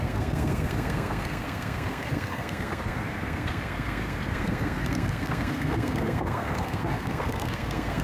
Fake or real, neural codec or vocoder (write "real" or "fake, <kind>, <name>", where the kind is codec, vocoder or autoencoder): fake, codec, SNAC